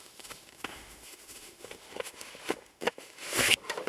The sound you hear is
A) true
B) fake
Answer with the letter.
B